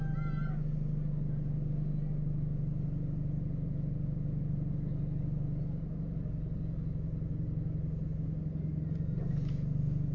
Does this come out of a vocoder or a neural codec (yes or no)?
no